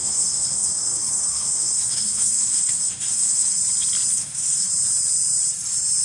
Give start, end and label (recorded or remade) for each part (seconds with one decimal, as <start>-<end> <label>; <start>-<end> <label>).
0.0-3.6 remade; 3.6-4.1 recorded; 4.1-4.7 remade; 4.7-6.0 recorded